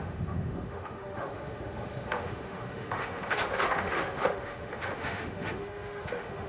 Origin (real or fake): fake